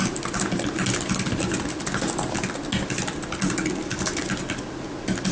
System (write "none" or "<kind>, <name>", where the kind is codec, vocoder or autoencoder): none